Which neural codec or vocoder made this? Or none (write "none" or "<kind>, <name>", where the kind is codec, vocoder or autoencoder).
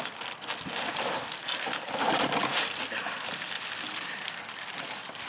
vocoder, BigVGAN v2